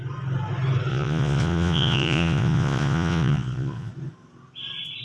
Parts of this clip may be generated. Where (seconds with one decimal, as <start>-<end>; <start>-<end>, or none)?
0.9-3.9